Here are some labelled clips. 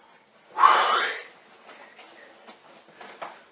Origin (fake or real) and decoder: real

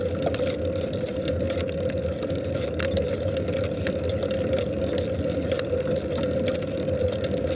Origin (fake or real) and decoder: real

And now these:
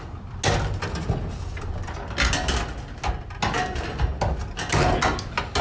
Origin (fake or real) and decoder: real